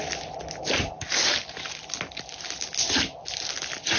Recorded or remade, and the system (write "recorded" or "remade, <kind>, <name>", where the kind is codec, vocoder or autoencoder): recorded